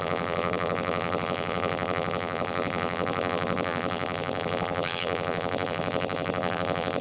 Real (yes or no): no